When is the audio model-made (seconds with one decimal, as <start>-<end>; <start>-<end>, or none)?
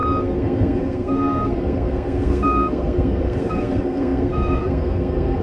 0.0-5.4